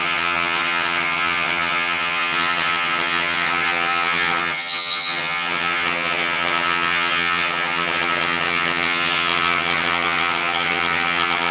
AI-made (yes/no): yes